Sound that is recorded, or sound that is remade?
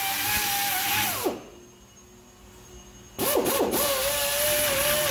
recorded